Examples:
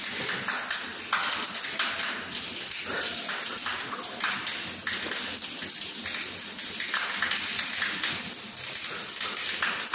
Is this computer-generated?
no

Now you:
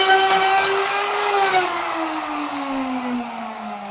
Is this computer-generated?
yes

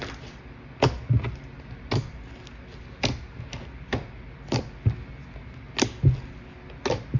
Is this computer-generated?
no